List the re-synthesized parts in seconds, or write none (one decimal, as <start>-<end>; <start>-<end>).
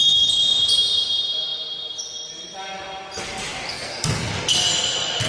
3.7-4.3